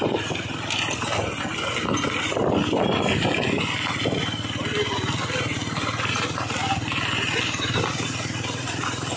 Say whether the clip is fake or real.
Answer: real